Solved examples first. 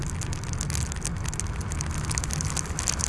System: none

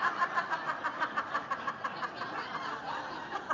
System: none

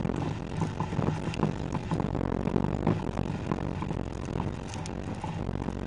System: none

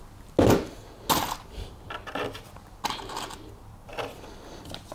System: none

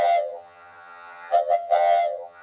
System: vocoder, HiFi-GAN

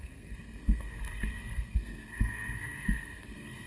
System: codec, SNAC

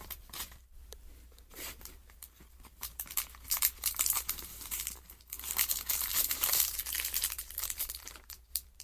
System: vocoder, BigVGAN v2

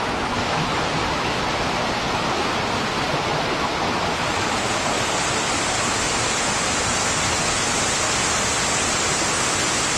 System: none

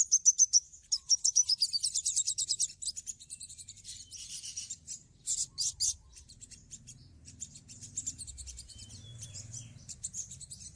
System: vocoder, BigVGAN v2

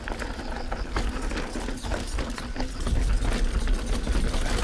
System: none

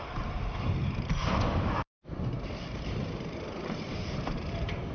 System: vocoder, BigVGAN v2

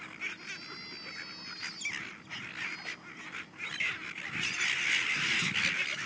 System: none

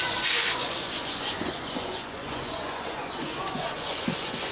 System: vocoder, Vocos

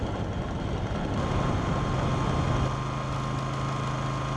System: none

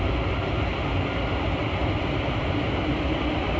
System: none